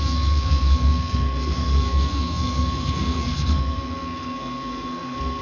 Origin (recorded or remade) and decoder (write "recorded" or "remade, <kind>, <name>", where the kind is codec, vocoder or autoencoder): remade, codec, SNAC